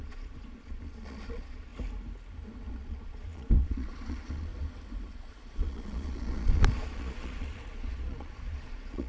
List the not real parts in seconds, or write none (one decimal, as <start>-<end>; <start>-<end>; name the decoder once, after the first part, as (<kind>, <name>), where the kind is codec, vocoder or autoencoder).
0.0-1.7 (vocoder, Vocos); 2.7-4.5; 5.1-9.1